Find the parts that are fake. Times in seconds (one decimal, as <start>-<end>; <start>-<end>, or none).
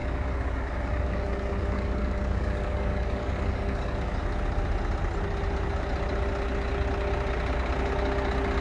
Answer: 0.0-4.2